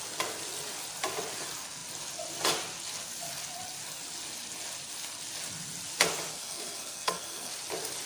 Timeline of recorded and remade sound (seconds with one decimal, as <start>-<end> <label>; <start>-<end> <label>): 0.0-6.3 recorded; 6.3-7.5 remade; 7.5-8.1 recorded